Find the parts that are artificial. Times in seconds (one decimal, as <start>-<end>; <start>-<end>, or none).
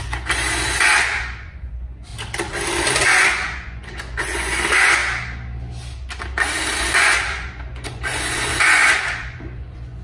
0.0-2.1; 2.9-5.0; 6.8-10.0